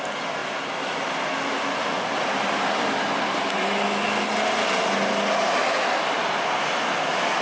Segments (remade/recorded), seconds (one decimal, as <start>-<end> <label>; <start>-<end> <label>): 0.0-7.4 recorded